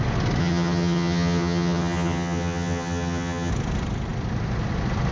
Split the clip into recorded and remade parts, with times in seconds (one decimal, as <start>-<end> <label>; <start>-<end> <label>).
0.0-0.4 recorded; 0.4-3.5 remade; 3.5-5.1 recorded